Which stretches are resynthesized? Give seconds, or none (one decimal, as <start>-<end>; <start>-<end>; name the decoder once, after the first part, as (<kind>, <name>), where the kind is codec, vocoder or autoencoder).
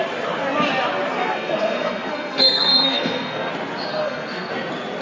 1.2-3.5 (codec, SNAC); 3.9-4.5